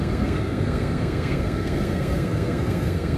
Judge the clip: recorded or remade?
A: remade